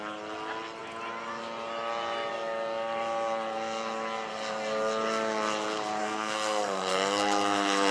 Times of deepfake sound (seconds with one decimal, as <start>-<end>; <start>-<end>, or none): 6.0-7.9